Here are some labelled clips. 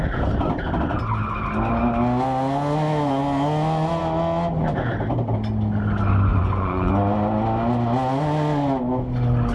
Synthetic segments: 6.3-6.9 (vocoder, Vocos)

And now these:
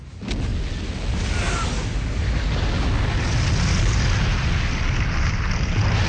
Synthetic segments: none

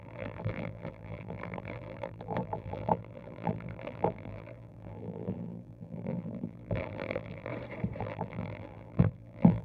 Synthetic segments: 0.0-7.5 (vocoder, BigVGAN v2); 8.0-9.6